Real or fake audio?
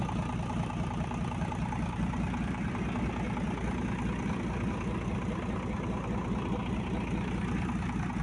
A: real